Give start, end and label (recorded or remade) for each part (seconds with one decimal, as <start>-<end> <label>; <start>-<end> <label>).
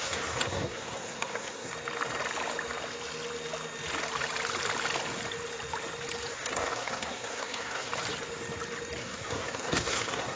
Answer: 0.0-1.7 remade; 1.7-6.3 recorded; 6.3-7.9 remade; 7.9-9.0 recorded; 9.0-10.4 remade